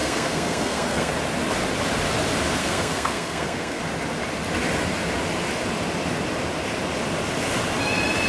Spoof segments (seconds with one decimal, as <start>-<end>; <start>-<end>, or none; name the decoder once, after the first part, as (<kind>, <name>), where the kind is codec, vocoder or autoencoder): 0.0-1.1 (codec, SNAC); 2.6-3.8